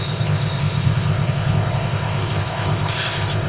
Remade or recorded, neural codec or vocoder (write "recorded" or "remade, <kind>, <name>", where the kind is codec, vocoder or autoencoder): remade, codec, ZipCodec